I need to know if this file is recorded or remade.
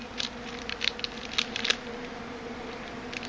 recorded